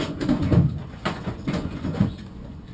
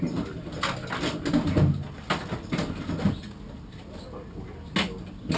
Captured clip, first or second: second